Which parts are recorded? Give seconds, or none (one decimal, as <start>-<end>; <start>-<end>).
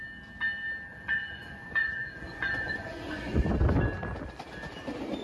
0.0-0.9; 3.4-5.2